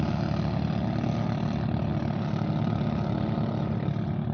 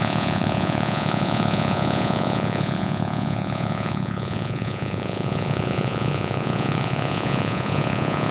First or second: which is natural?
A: first